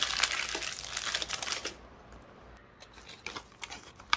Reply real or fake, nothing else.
real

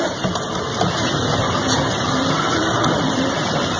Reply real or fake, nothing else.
fake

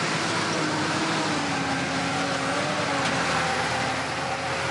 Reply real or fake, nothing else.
real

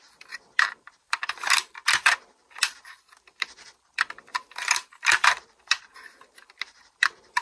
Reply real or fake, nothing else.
fake